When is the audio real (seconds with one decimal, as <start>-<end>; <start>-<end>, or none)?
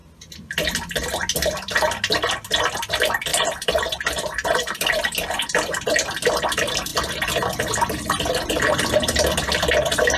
0.0-3.3; 5.8-10.2